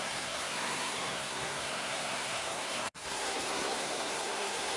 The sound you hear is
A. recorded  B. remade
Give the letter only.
B